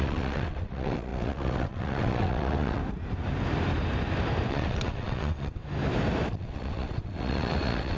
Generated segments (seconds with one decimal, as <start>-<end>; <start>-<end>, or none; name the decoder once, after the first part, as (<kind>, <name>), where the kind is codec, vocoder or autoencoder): 0.0-2.8 (vocoder, WaveNeXt); 4.5-5.6; 6.3-8.0